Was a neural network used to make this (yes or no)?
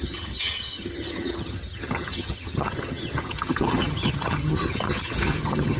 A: yes